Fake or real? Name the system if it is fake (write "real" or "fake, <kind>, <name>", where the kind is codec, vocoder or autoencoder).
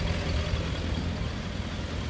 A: real